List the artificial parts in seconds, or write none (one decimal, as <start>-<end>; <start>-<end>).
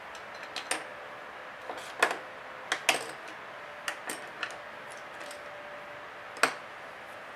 none